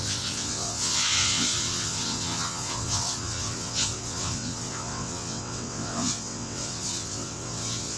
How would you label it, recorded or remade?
remade